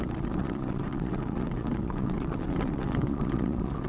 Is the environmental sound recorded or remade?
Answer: remade